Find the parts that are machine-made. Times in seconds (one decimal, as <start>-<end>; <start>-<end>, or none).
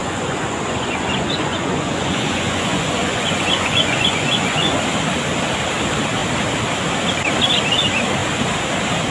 0.0-4.8